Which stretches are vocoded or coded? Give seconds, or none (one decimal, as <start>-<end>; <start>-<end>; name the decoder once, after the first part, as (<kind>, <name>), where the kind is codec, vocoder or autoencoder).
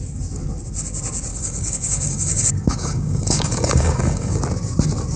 1.3-4.4 (codec, DAC)